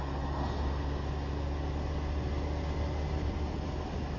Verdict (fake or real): real